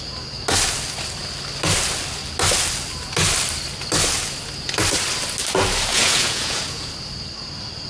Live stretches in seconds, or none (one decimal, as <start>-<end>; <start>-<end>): 0.0-5.9; 6.9-7.9